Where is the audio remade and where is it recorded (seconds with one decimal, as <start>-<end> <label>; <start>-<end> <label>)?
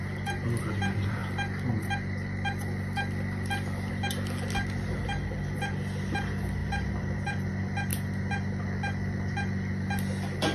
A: 0.0-6.6 recorded; 6.6-7.5 remade; 7.5-10.5 recorded